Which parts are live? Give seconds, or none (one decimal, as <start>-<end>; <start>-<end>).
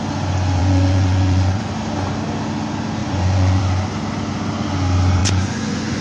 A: 0.0-0.6; 1.7-3.0; 3.6-5.2